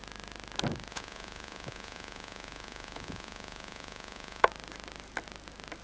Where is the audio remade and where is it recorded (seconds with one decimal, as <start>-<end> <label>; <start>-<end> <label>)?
0.0-0.9 recorded; 0.9-4.4 remade; 4.4-5.8 recorded